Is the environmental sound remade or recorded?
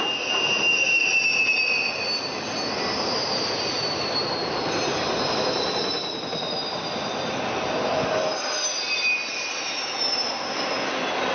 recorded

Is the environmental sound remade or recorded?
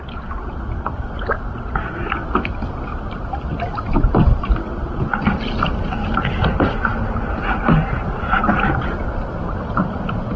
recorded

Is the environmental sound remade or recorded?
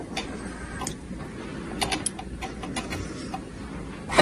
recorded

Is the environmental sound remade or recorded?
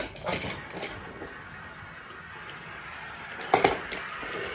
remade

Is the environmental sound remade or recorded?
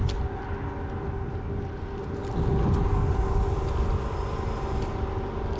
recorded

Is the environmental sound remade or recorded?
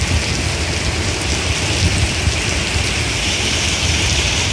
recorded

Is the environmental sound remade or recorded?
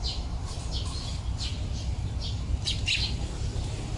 remade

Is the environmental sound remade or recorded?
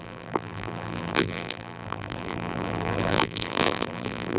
remade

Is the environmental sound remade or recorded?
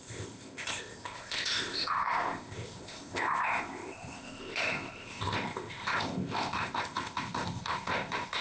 remade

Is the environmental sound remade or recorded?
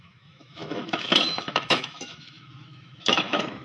remade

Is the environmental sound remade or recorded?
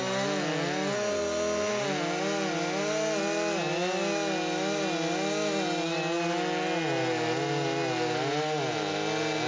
recorded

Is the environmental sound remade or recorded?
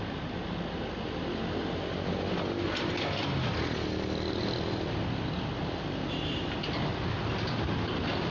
recorded